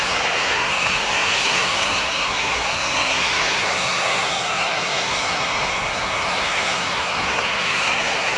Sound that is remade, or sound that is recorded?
remade